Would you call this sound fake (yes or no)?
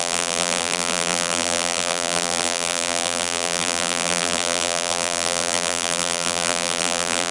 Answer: yes